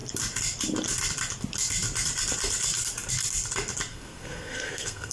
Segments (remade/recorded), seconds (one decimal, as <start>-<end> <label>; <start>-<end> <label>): 0.0-3.9 recorded; 3.9-5.1 remade